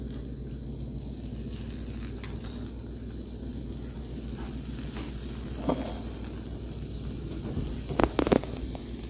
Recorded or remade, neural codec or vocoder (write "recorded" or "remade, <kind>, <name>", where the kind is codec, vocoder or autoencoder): recorded